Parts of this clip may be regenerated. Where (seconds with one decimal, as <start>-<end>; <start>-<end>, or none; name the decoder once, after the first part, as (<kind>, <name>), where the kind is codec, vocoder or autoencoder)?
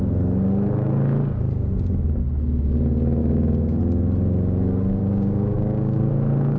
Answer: 3.2-3.8 (codec, DAC); 5.0-6.1